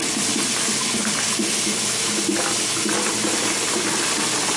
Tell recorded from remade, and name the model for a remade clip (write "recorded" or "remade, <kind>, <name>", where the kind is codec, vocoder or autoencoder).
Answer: recorded